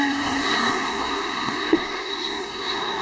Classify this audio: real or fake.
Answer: fake